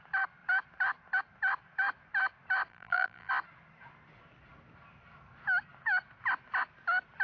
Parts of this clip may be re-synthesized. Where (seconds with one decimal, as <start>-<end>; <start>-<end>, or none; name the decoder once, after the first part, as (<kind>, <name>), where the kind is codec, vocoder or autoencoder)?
2.7-3.3 (vocoder, BigVGAN v2)